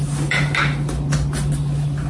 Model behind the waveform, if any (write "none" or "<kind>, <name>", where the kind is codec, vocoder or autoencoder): none